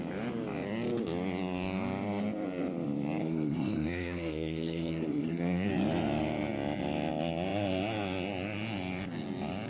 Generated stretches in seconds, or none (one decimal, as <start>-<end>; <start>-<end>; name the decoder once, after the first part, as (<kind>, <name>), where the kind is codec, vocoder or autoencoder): 3.2-5.7 (codec, SNAC)